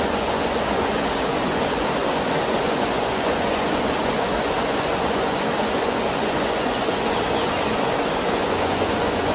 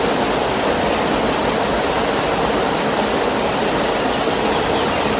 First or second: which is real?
second